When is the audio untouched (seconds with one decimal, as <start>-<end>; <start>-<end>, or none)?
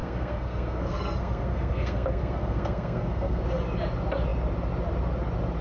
3.4-5.6